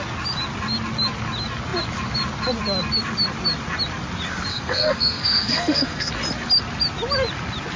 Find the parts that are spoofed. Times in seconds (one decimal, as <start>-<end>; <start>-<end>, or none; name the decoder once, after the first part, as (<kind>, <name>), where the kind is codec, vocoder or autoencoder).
4.5-6.1 (codec, SNAC)